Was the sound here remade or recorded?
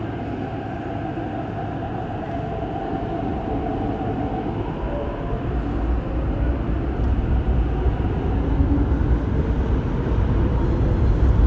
recorded